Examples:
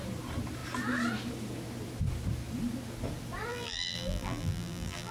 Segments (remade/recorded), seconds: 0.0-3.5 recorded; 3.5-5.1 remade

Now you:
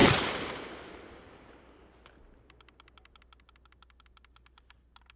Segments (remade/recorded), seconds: 0.0-1.8 remade; 1.8-5.2 recorded

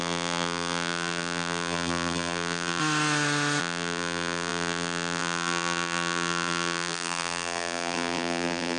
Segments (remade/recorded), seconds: 0.0-2.8 remade; 2.8-3.6 recorded; 3.6-8.8 remade